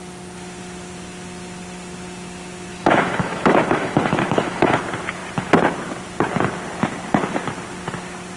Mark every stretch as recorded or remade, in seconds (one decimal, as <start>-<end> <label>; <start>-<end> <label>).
0.0-2.7 recorded; 2.7-4.8 remade; 4.8-8.4 recorded